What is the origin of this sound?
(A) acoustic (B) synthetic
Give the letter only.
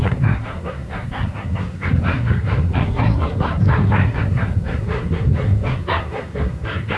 B